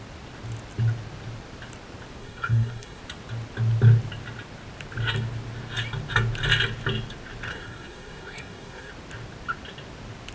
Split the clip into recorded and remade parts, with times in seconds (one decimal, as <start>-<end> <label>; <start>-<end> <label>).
0.0-2.2 recorded; 2.2-3.0 remade; 3.0-7.5 recorded; 7.5-8.9 remade; 8.9-10.3 recorded